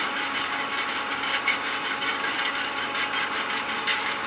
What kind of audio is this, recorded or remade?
remade